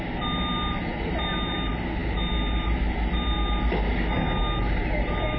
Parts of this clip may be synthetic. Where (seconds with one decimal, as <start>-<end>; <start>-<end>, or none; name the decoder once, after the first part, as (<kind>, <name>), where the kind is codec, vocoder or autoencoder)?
none